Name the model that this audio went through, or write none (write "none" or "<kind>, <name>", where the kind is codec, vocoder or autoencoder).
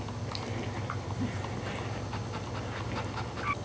none